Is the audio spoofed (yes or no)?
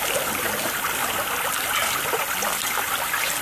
no